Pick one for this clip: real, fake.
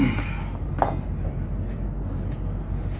real